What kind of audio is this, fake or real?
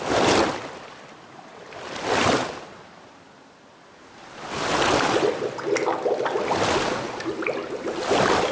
real